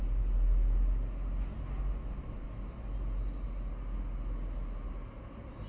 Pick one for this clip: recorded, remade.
recorded